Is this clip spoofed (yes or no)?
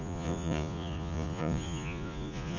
yes